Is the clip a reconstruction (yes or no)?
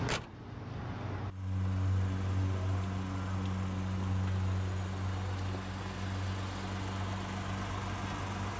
no